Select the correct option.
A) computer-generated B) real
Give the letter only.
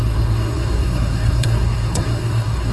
A